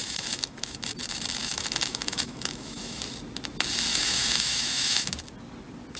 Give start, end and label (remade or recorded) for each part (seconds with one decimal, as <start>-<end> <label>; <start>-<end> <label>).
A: 0.0-0.8 remade; 0.8-1.4 recorded; 1.4-3.0 remade; 3.0-3.9 recorded; 3.9-5.1 remade; 5.1-6.0 recorded